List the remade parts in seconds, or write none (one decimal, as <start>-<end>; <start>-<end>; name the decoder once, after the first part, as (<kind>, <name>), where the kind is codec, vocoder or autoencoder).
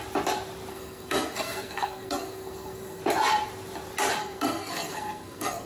0.7-3.0 (codec, SNAC); 4.2-5.7